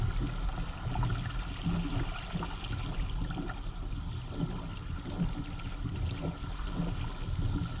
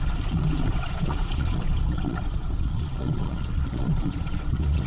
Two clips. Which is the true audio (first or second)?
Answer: first